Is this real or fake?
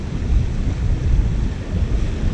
real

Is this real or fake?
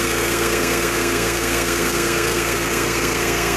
fake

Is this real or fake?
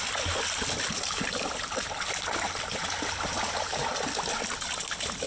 real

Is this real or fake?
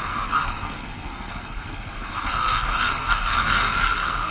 fake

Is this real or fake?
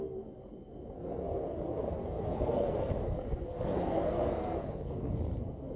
fake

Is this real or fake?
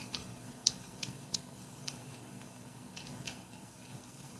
fake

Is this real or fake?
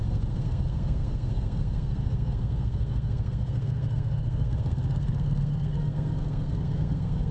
fake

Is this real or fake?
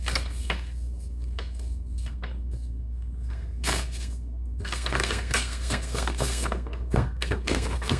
fake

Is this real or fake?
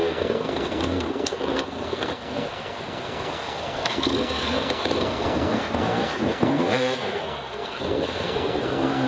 fake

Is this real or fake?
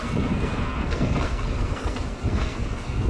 fake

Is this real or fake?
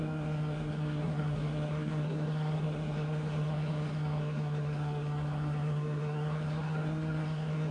fake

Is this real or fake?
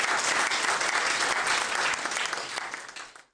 real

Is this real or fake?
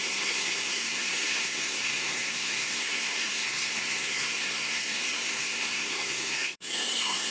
fake